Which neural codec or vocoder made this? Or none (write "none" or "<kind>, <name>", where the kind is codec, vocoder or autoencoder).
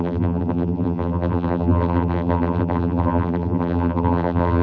vocoder, BigVGAN v2